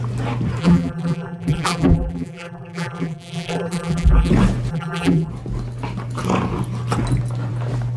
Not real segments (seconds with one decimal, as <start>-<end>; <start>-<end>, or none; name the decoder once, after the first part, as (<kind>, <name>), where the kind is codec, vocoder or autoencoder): 0.6-4.3 (vocoder, BigVGAN v2); 4.7-5.3